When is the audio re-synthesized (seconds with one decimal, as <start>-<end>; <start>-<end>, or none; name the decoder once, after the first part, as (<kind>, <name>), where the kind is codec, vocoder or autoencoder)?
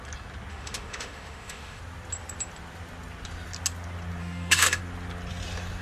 0.5-1.8 (autoencoder, DAC-VAE); 4.2-4.8